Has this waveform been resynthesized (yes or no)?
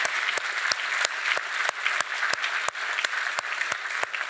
no